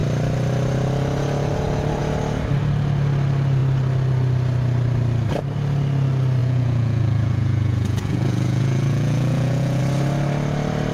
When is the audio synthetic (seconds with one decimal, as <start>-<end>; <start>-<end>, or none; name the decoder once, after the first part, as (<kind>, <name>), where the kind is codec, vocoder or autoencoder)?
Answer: 6.4-9.8 (vocoder, Vocos)